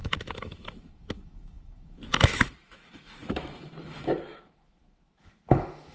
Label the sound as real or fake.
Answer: fake